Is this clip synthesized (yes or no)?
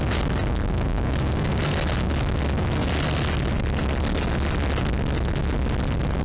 no